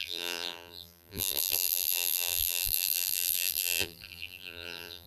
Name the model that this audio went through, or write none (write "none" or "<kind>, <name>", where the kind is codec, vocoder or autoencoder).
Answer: vocoder, BigVGAN v2